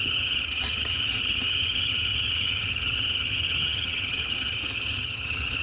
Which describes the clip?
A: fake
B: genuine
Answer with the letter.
A